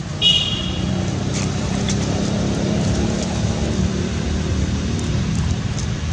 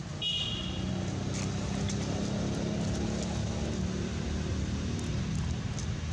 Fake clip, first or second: first